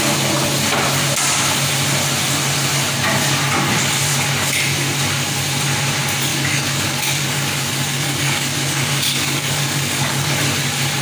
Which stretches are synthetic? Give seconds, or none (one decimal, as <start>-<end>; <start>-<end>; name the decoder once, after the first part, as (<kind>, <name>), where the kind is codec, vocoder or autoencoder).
6.3-10.3 (codec, DAC)